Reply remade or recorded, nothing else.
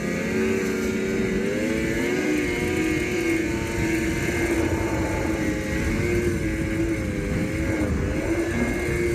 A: recorded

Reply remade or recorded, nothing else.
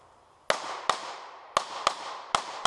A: recorded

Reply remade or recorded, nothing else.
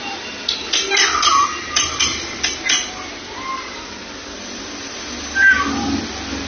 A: recorded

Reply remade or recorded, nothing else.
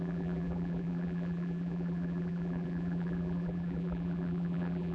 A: remade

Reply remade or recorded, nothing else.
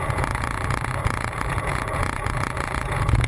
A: remade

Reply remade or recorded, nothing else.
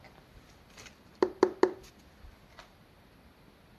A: recorded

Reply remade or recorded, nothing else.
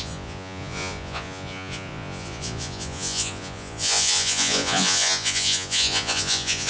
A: remade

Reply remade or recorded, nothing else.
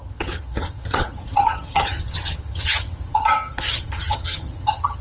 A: remade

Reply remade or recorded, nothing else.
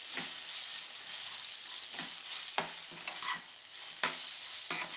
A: recorded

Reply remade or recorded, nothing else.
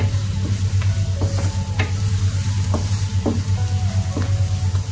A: recorded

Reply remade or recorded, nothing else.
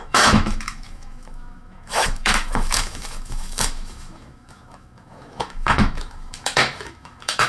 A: remade